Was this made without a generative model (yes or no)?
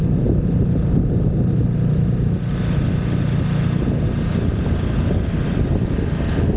yes